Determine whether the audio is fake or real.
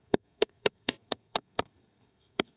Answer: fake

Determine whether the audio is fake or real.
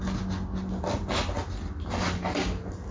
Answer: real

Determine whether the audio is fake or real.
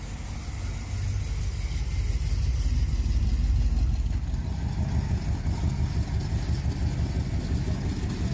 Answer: real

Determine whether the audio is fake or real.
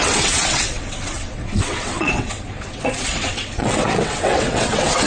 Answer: fake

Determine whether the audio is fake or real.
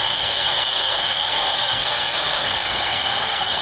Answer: fake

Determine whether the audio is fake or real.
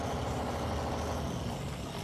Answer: real